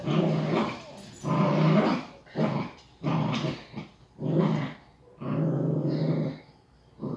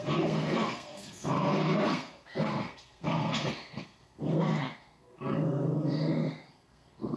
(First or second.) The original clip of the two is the first